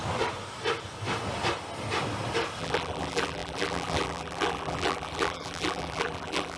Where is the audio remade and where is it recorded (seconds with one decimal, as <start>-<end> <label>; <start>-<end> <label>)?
0.0-2.6 recorded; 2.6-6.6 remade